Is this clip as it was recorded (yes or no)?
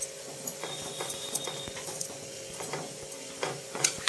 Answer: no